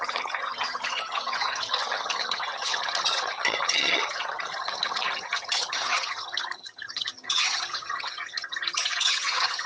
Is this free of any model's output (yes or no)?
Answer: no